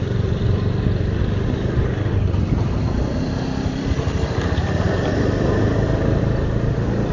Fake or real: fake